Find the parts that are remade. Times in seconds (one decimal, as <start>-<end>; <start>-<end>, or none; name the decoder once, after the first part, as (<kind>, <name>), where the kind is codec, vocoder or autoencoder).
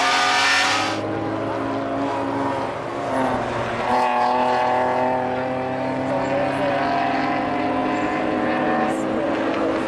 none